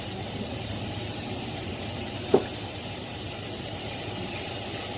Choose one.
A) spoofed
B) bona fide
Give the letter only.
A